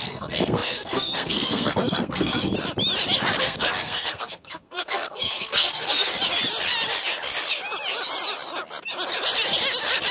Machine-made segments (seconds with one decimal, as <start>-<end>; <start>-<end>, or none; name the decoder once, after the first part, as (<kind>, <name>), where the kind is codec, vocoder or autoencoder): 0.0-2.5 (codec, SNAC); 3.4-6.1